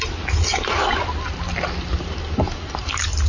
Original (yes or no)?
yes